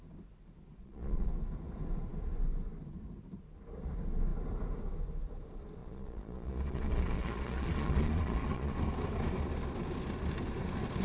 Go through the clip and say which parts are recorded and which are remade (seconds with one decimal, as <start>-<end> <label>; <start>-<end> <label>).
0.0-0.8 recorded; 0.8-1.3 remade; 1.3-5.8 recorded; 5.8-8.7 remade; 8.7-11.0 recorded